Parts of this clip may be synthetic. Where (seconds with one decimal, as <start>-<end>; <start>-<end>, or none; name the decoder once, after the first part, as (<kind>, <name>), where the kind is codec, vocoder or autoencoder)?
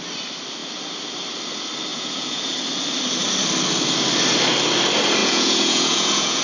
1.9-2.5 (vocoder, Vocos); 5.2-6.4